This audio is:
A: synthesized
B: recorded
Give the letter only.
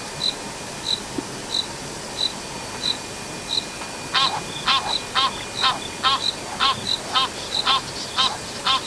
B